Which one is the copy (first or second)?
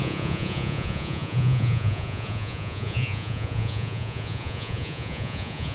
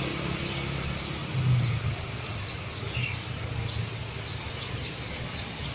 first